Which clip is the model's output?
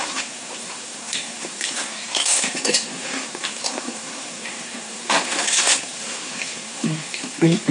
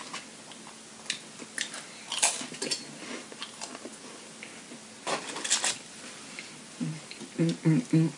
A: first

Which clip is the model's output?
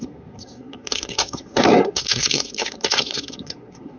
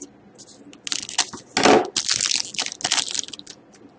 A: first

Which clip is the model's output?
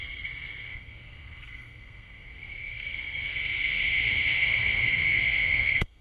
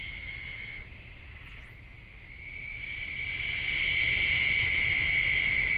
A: first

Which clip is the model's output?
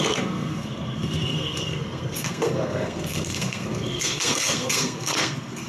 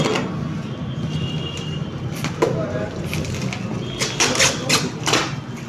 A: first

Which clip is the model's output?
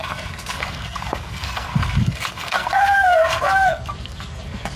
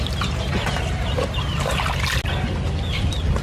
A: first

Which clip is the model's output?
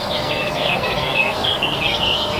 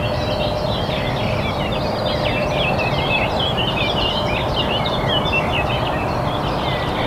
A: first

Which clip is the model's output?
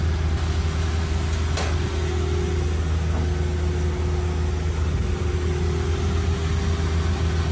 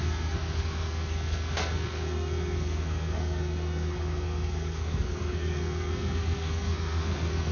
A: second